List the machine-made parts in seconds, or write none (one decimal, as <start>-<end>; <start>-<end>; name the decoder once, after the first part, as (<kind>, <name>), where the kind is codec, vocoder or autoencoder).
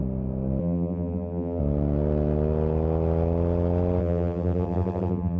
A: 0.6-1.6 (vocoder, BigVGAN v2); 4.0-5.4